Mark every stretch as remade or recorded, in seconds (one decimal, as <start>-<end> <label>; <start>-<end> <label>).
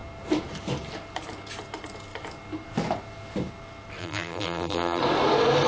0.0-4.0 recorded; 4.0-5.0 remade; 5.0-5.7 recorded